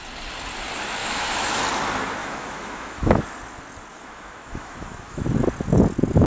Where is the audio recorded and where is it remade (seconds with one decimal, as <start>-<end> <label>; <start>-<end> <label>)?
0.0-1.0 recorded; 1.0-1.6 remade; 1.6-2.2 recorded; 2.2-3.2 remade; 3.2-3.9 recorded; 3.9-5.2 remade; 5.2-6.3 recorded